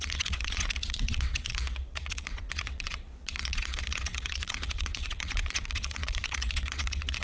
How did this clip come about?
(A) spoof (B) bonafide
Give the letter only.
A